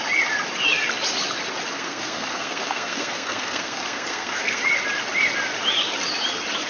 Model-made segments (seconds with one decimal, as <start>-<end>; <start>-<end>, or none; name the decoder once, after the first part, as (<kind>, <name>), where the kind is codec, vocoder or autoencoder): 1.7-4.6 (codec, SNAC)

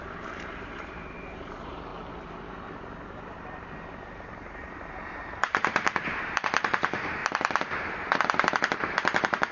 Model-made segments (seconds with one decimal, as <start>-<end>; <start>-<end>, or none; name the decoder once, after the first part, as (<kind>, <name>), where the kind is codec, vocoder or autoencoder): 0.0-1.9 (vocoder, BigVGAN v2); 3.9-7.2; 7.8-9.5

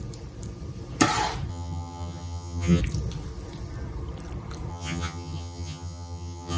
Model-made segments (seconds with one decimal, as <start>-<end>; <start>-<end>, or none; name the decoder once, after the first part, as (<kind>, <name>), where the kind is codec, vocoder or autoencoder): 1.5-2.8 (vocoder, HiFi-GAN); 4.7-6.6

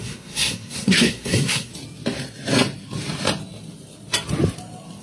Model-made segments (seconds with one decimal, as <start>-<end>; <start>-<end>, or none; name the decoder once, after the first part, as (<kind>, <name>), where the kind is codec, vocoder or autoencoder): 0.0-1.7 (codec, SNAC)